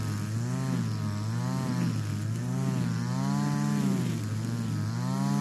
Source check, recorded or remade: recorded